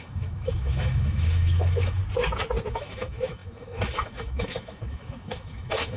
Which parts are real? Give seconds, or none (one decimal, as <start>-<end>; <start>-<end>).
2.0-2.7